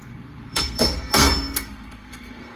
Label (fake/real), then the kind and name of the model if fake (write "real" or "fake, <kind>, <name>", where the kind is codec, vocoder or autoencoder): fake, codec, SNAC